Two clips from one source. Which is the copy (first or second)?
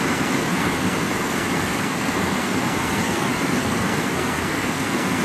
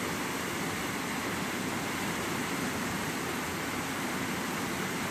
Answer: first